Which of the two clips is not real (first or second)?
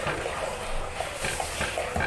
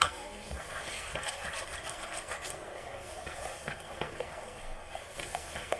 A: second